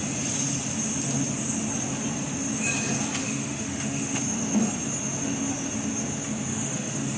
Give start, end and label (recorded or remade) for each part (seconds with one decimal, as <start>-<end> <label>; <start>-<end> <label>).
0.0-3.2 recorded; 3.2-4.2 remade; 4.2-6.5 recorded; 6.5-7.2 remade